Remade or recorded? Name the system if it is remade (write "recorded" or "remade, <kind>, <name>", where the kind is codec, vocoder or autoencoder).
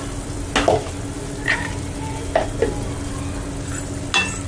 recorded